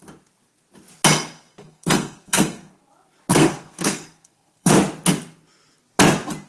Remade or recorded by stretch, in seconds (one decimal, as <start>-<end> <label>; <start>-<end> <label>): 0.0-1.6 recorded; 1.6-2.8 remade; 2.8-3.3 recorded; 3.3-4.7 remade; 4.7-6.5 recorded